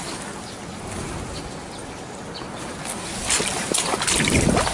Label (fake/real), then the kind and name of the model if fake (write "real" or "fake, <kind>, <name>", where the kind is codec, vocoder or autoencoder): real